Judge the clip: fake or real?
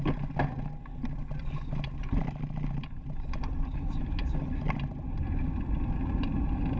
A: real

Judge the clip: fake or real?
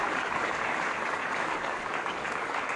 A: fake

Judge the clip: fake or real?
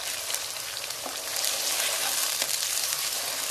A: real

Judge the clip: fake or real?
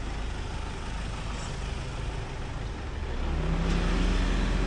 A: real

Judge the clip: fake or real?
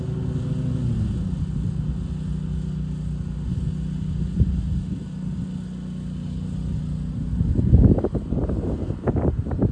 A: real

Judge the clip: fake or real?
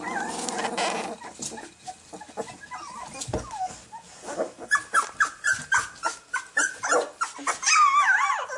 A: real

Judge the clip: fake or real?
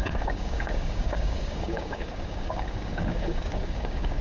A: fake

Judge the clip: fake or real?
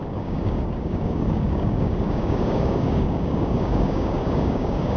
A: fake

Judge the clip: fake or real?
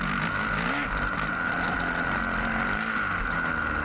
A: real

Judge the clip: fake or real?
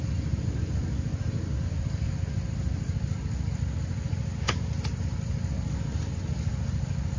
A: real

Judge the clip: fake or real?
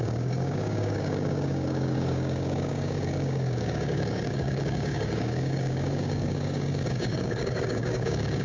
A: fake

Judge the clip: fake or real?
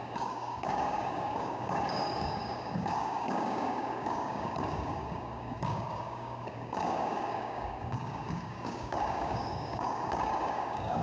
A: fake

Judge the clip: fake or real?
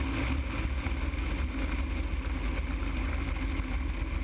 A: real